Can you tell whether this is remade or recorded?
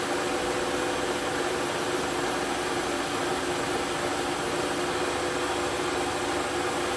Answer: recorded